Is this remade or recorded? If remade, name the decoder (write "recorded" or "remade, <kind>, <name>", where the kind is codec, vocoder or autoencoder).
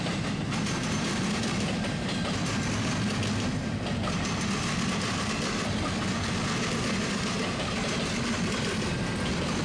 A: recorded